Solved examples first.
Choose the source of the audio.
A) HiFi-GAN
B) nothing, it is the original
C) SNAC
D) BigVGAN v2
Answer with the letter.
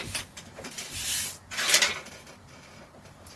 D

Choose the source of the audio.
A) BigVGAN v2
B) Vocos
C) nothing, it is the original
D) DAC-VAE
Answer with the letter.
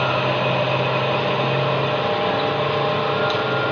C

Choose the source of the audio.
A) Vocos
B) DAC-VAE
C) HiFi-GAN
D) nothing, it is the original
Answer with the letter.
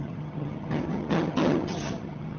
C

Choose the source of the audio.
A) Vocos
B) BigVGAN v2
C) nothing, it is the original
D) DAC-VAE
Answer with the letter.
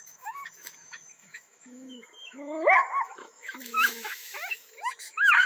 D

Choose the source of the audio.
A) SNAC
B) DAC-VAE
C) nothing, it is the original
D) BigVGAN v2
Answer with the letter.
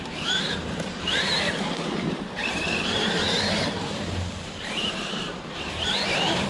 D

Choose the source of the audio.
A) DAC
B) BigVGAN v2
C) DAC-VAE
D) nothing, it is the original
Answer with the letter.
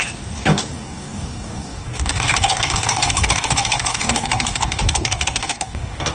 A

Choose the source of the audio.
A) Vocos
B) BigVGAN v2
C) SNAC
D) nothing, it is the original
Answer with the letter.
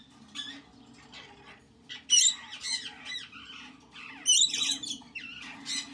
D